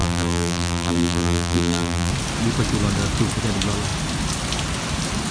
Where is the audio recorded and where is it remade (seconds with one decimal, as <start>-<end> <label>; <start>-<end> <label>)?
0.0-2.1 remade; 2.1-5.3 recorded